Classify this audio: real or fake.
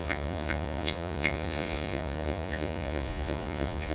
fake